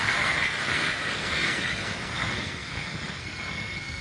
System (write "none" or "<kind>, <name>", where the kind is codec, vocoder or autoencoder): codec, SNAC